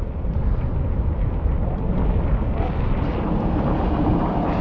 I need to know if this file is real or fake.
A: real